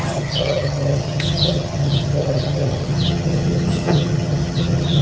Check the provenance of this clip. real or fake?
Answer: fake